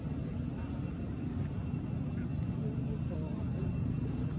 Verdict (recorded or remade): recorded